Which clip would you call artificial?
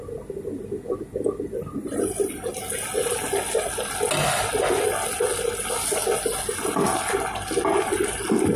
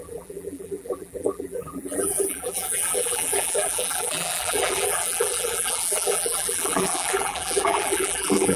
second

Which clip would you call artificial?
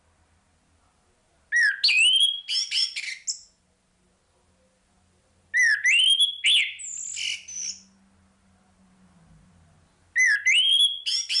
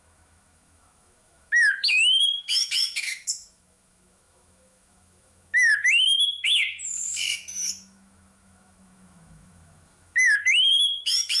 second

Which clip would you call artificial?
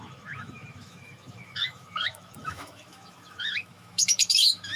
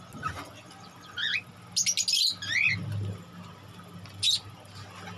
first